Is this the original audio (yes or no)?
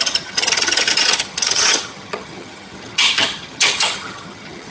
no